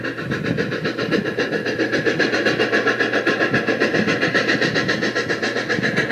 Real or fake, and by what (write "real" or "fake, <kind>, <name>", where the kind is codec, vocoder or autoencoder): real